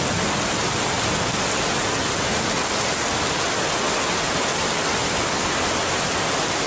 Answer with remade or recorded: recorded